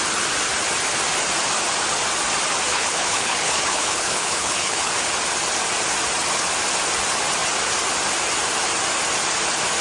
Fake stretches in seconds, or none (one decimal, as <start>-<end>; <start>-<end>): 2.7-4.9